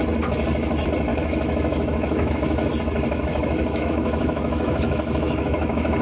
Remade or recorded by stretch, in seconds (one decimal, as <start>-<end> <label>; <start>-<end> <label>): 0.0-1.1 recorded; 1.1-2.7 remade; 2.7-3.1 recorded; 3.1-6.0 remade